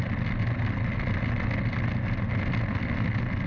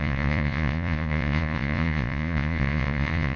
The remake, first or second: second